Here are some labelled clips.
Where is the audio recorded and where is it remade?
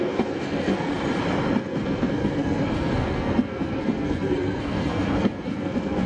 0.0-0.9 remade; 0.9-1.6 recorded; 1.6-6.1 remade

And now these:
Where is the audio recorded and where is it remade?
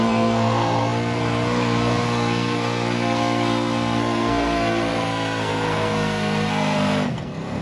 0.0-7.6 remade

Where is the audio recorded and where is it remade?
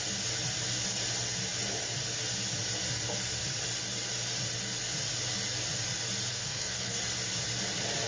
0.0-6.3 recorded; 6.3-7.0 remade; 7.0-8.1 recorded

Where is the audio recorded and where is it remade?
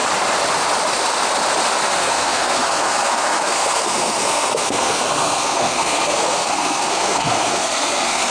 0.0-1.9 recorded; 1.9-8.3 remade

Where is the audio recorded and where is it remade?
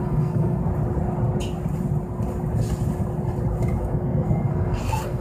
0.0-0.7 remade; 0.7-3.8 recorded; 3.8-5.2 remade